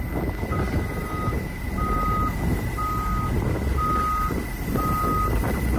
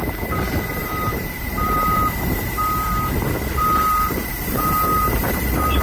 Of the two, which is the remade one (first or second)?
second